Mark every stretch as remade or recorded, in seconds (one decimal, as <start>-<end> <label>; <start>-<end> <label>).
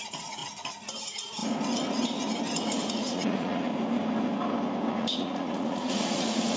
0.0-0.4 remade; 0.4-1.0 recorded; 1.0-1.4 remade; 1.4-2.9 recorded; 2.9-3.7 remade; 3.7-4.9 recorded; 4.9-6.6 remade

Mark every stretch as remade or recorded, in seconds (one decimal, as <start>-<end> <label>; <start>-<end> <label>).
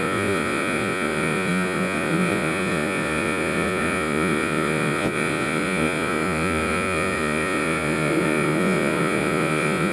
0.0-9.9 remade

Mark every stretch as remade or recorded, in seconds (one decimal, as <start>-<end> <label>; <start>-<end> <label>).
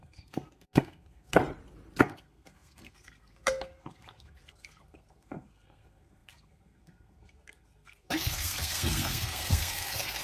0.0-1.4 remade; 1.4-2.0 recorded; 2.0-10.2 remade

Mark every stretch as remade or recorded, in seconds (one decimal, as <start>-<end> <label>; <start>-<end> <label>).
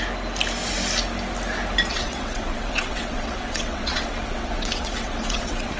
0.0-1.9 recorded; 1.9-5.8 remade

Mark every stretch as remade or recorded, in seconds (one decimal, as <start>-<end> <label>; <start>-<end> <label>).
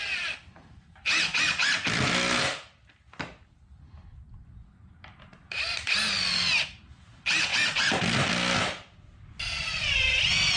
0.0-10.6 recorded